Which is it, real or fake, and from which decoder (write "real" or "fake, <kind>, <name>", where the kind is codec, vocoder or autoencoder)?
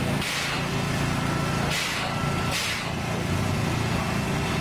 real